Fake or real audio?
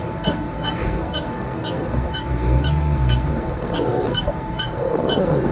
fake